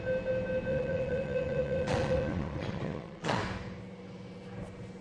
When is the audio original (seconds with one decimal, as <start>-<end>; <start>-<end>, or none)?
0.0-0.7; 3.4-5.0